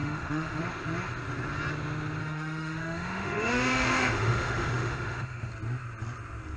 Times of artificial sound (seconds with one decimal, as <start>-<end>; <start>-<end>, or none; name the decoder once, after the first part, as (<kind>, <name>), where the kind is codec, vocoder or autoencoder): 0.0-0.6 (autoencoder, DAC-VAE); 2.2-5.5